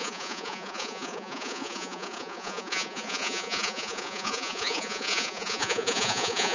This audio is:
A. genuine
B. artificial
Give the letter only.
B